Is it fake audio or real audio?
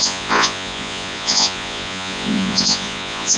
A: fake